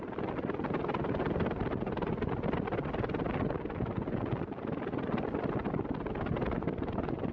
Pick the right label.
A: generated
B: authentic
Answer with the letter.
B